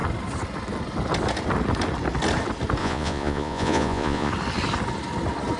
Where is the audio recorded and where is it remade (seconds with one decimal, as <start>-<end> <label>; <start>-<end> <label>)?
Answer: 0.0-2.8 recorded; 2.8-4.3 remade; 4.3-5.6 recorded